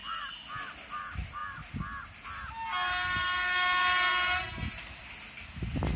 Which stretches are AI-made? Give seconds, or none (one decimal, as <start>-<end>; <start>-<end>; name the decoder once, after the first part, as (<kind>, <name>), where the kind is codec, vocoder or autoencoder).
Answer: none